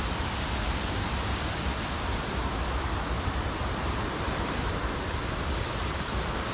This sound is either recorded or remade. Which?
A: recorded